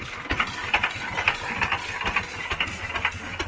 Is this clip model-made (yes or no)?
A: no